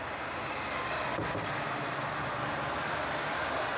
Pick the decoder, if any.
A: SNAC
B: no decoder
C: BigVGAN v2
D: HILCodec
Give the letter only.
B